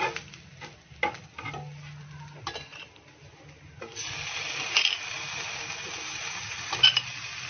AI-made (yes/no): no